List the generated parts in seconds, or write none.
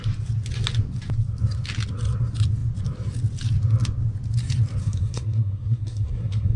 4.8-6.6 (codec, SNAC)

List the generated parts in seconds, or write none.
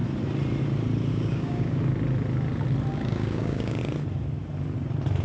1.1-1.8 (codec, DAC); 2.9-3.8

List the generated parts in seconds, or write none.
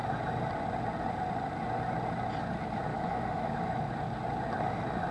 2.9-3.9 (autoencoder, DAC-VAE)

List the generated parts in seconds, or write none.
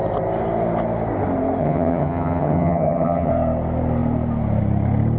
1.6-3.3 (vocoder, HiFi-GAN)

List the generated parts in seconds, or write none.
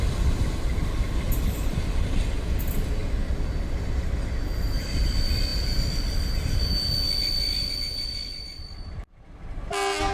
none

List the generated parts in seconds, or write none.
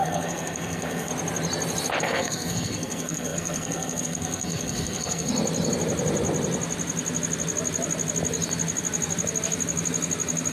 0.0-1.1 (codec, SNAC); 2.0-5.3